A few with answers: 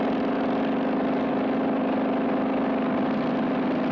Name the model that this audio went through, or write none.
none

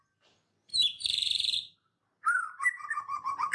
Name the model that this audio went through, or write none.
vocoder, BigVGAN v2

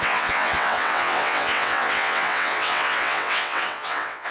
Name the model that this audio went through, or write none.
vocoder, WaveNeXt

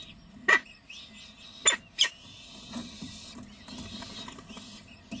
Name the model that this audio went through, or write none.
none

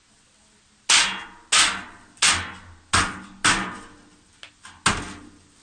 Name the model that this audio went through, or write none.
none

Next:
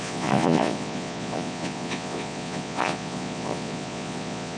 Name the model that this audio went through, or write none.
vocoder, Vocos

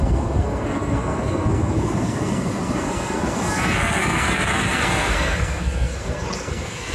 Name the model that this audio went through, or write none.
codec, SNAC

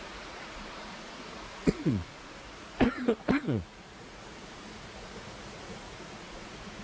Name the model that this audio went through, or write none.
vocoder, Vocos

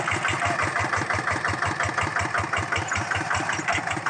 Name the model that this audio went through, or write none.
none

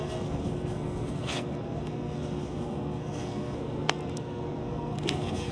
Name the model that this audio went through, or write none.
codec, SNAC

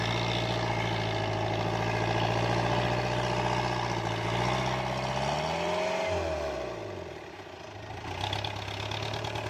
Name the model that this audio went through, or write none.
none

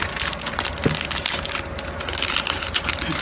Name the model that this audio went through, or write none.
none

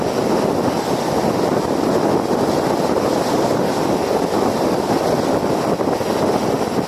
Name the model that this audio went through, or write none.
none